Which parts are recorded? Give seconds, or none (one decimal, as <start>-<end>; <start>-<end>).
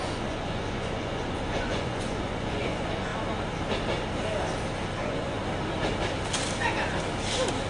3.1-5.0; 5.4-7.7